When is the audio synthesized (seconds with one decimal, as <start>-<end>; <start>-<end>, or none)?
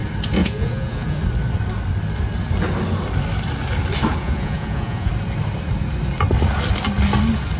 0.4-1.2; 4.1-5.1